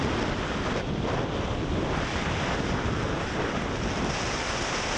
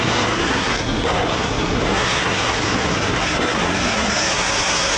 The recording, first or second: first